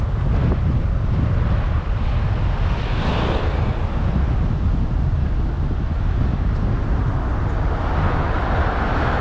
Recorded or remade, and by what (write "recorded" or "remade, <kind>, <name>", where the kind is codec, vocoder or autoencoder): recorded